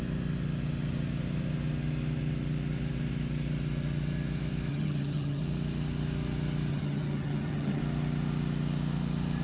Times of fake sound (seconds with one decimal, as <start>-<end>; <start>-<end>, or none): 4.7-5.4; 6.7-7.8